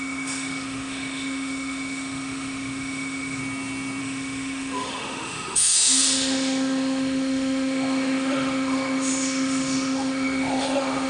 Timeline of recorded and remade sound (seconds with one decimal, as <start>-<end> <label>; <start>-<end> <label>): 0.0-3.4 remade; 3.4-4.0 recorded; 4.0-11.1 remade